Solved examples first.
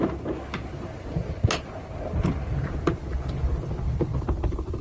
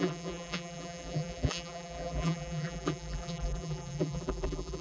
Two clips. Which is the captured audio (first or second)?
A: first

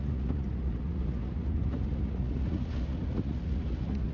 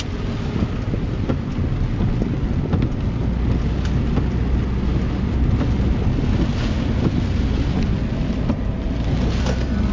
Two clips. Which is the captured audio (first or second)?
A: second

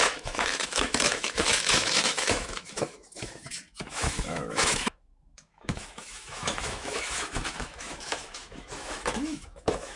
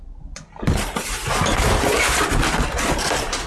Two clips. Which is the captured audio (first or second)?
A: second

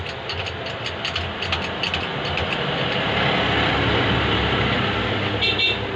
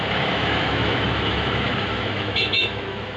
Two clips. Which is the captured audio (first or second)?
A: first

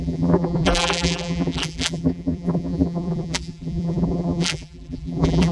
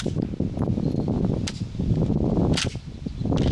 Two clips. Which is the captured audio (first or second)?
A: second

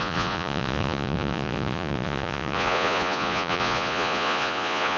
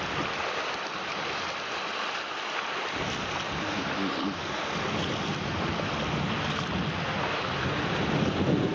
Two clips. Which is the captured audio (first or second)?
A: second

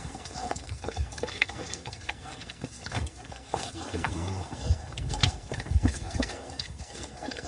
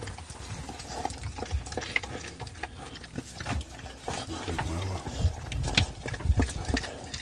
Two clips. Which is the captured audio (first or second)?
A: second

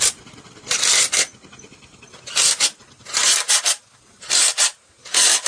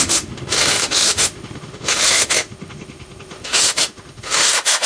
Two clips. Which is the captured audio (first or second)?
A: first